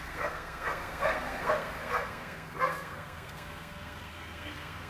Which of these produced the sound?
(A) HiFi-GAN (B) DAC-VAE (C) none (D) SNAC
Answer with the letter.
D